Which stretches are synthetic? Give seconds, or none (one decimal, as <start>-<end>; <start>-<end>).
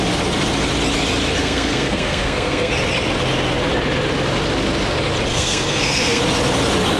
1.4-2.7; 5.3-6.2